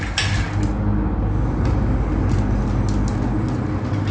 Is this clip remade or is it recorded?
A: recorded